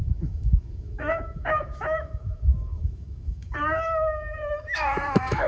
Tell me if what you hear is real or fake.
fake